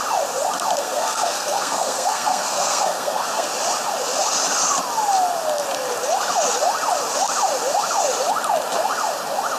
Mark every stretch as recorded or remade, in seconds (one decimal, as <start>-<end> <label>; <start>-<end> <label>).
0.0-0.8 recorded; 0.8-3.5 remade; 3.5-9.6 recorded